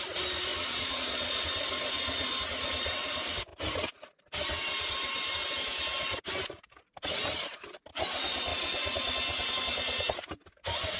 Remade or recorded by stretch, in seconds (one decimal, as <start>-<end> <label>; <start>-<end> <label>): 0.0-0.5 recorded; 0.5-1.4 remade; 1.4-11.0 recorded